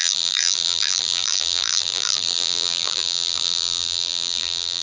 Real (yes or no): no